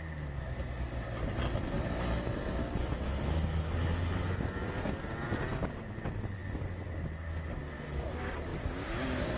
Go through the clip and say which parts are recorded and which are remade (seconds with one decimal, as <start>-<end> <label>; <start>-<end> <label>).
0.0-9.4 recorded